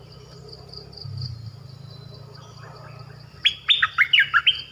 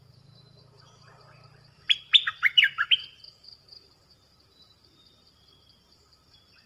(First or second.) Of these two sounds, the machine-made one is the second